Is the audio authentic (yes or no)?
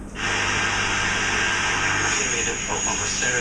yes